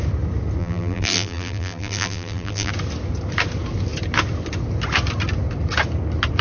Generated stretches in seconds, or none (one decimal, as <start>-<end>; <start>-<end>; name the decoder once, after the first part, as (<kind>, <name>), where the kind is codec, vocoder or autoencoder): 0.6-2.7 (vocoder, BigVGAN v2)